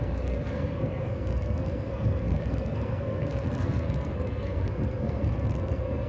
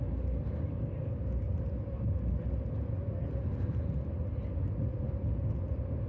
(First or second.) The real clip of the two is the second